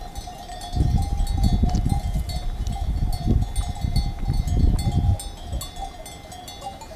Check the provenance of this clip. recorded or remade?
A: recorded